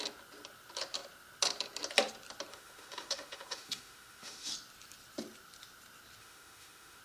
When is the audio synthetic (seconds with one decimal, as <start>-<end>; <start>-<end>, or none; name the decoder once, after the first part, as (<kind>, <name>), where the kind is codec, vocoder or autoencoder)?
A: 2.5-4.5 (autoencoder, DAC-VAE); 6.2-7.0

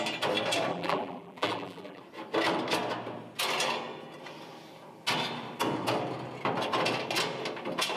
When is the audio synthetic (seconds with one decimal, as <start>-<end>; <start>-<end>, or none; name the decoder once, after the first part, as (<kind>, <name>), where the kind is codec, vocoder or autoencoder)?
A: 0.7-2.0 (vocoder, BigVGAN v2)

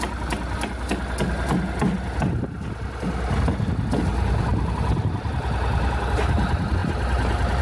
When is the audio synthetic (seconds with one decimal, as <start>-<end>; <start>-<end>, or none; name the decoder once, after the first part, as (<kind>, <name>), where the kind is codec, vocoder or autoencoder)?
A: none

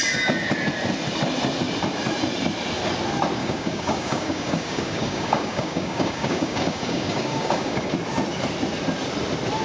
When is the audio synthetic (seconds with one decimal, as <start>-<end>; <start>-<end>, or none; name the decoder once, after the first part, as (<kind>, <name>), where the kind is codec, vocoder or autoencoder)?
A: 3.4-7.9 (codec, DAC)